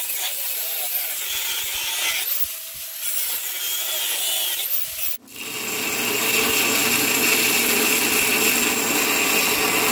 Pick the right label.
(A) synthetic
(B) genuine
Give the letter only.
B